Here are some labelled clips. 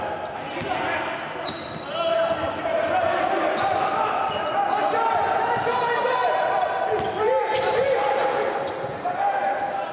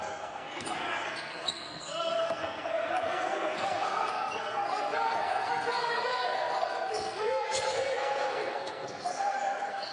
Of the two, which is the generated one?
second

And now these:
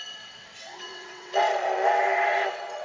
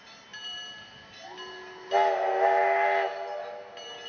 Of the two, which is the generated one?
first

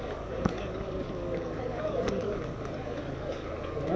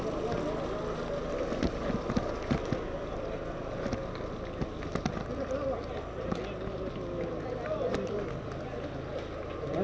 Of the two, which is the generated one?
first